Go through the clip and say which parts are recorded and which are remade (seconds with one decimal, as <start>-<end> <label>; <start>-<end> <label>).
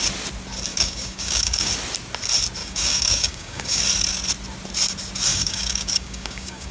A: 0.0-0.7 recorded; 0.7-1.7 remade; 1.7-2.6 recorded; 2.6-3.8 remade; 3.8-5.3 recorded; 5.3-6.7 remade